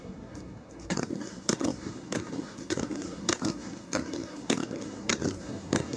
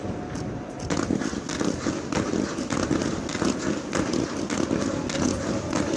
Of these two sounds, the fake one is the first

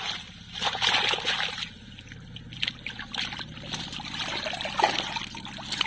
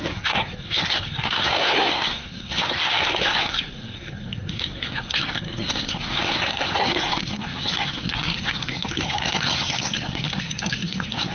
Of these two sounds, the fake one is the second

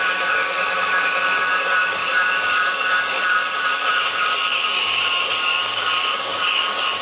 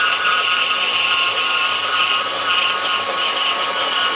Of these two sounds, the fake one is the first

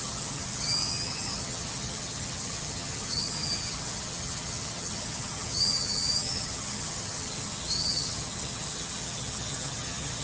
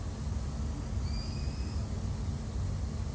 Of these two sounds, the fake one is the first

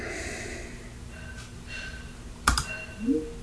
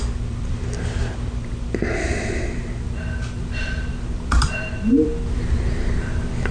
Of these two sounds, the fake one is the second